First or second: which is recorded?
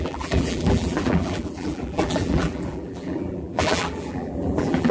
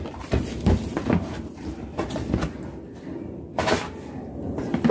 second